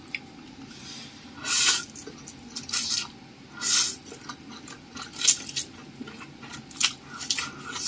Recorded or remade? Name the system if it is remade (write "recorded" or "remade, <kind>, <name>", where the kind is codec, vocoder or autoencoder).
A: recorded